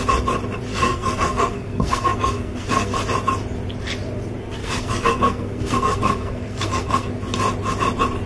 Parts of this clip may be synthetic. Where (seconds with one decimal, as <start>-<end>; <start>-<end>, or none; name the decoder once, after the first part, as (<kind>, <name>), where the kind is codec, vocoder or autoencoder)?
0.7-3.0 (codec, SNAC); 4.6-7.1